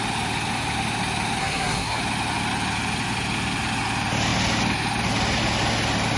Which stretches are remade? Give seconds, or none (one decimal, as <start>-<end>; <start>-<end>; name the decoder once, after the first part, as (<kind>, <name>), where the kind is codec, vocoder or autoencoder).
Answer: 1.4-2.0 (codec, SNAC)